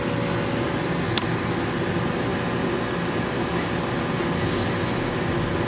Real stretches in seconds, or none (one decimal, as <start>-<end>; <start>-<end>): 0.0-5.7